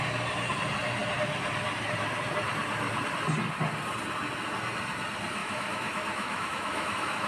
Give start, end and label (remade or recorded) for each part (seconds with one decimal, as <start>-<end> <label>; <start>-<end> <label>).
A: 0.0-5.4 recorded; 5.4-7.3 remade